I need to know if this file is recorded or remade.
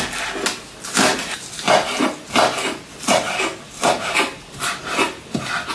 recorded